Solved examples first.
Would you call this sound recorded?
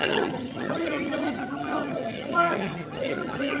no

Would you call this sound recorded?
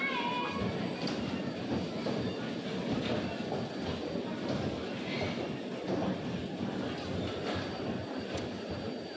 yes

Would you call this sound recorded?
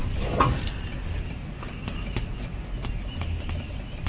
yes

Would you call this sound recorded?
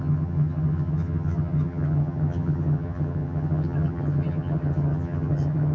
no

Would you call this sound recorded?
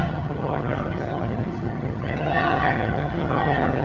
no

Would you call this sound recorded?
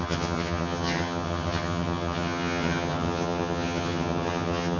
no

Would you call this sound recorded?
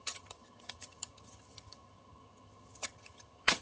no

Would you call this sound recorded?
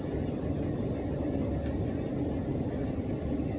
yes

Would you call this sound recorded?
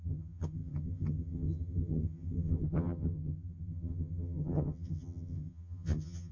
no